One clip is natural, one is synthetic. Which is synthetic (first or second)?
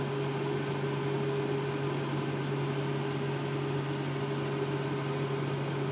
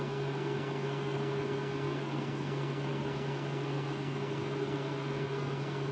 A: second